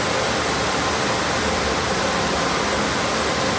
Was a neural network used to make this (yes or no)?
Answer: no